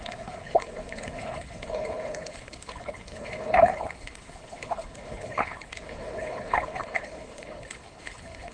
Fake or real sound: fake